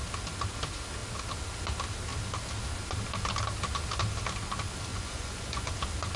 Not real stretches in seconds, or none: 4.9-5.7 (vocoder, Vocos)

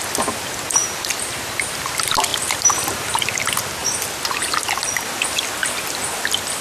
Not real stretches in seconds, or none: 0.8-1.9 (vocoder, BigVGAN v2); 2.3-3.1; 3.8-4.4; 5.6-6.6